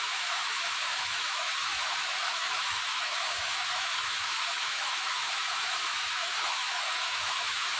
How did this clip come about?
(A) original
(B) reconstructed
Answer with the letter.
B